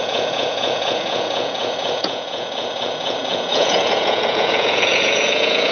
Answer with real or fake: fake